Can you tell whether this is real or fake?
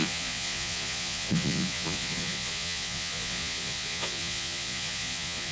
fake